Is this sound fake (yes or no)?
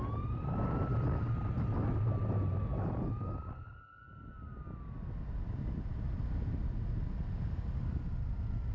no